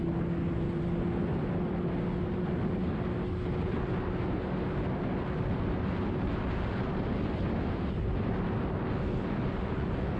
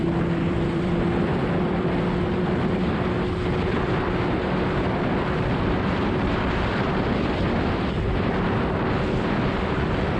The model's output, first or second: second